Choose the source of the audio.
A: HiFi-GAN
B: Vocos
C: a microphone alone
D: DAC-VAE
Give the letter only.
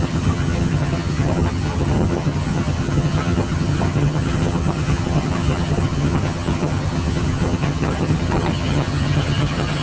A